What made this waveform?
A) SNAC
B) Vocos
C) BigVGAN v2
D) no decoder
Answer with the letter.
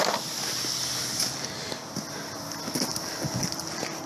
D